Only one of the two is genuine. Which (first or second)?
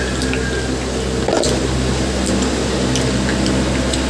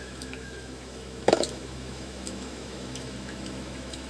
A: first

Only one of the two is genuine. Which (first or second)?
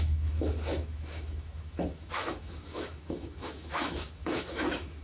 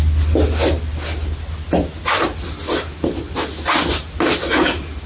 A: second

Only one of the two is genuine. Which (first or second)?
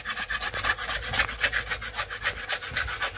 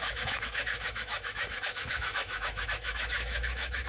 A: first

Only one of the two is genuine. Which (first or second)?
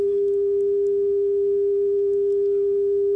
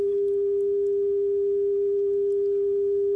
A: second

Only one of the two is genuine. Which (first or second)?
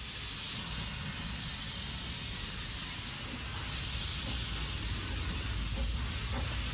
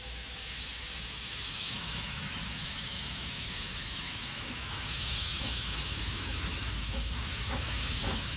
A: first